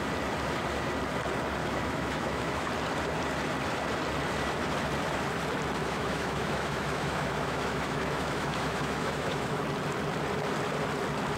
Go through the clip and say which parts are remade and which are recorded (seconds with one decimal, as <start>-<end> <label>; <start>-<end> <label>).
0.0-1.6 recorded; 1.6-2.7 remade; 2.7-5.8 recorded; 5.8-9.6 remade; 9.6-11.4 recorded